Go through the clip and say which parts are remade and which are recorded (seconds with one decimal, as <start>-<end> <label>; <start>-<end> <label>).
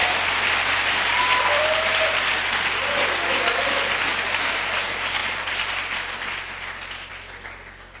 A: 0.0-8.0 recorded